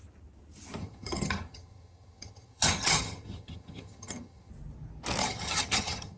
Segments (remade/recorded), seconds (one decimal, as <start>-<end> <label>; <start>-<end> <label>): 0.0-0.8 recorded; 0.8-4.5 remade; 4.5-5.2 recorded; 5.2-6.2 remade